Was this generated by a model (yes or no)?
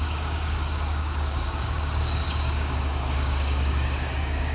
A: yes